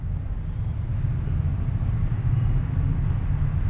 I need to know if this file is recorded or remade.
recorded